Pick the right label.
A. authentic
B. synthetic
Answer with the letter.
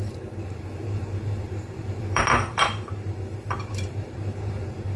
B